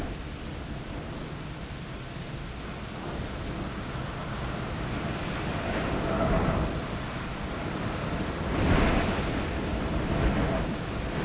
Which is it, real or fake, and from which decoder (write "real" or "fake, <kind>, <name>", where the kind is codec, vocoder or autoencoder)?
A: real